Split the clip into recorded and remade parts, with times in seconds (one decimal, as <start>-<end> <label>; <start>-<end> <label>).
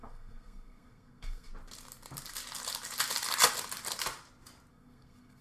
0.0-1.5 remade; 1.5-4.7 recorded; 4.7-5.4 remade